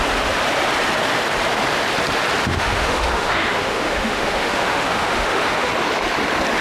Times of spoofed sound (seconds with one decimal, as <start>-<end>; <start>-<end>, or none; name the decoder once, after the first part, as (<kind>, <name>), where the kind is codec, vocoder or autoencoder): 2.4-5.7 (autoencoder, DAC-VAE)